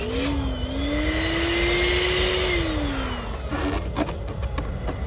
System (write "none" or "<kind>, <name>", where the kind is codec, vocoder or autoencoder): none